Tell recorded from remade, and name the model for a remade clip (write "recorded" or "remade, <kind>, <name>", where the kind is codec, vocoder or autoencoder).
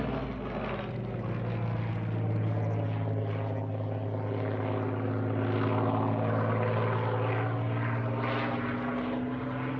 recorded